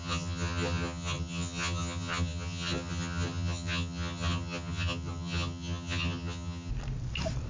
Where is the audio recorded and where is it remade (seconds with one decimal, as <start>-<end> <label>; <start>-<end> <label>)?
0.0-6.7 remade; 6.7-7.5 recorded